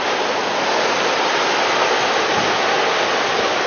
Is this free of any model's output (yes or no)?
yes